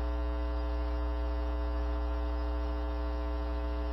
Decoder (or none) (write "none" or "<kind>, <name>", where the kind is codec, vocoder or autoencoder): none